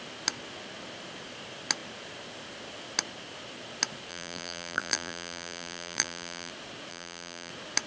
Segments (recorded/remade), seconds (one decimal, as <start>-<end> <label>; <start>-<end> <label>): 0.0-4.1 recorded; 4.1-6.5 remade; 6.5-6.9 recorded; 6.9-7.5 remade; 7.5-7.9 recorded